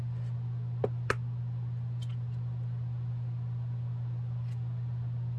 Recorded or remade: recorded